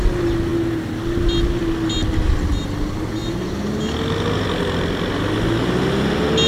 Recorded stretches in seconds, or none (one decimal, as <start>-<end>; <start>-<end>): 0.0-6.5